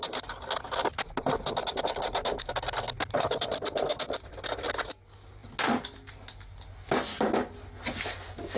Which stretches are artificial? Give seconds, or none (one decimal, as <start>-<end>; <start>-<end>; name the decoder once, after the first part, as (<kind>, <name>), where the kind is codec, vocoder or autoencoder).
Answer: none